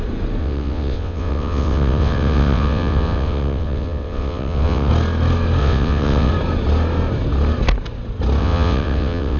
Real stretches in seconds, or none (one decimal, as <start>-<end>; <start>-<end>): 0.0-0.4; 4.9-5.6; 6.3-8.4